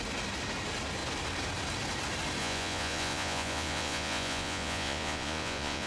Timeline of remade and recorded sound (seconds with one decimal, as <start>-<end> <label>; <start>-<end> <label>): 0.0-2.4 recorded; 2.4-5.9 remade